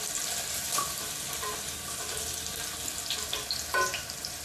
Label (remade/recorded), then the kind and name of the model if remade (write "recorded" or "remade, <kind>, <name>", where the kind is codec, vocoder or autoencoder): recorded